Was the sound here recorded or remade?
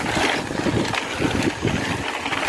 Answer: recorded